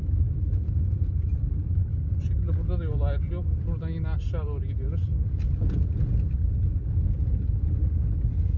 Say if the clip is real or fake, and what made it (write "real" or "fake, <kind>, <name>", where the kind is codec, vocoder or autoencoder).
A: real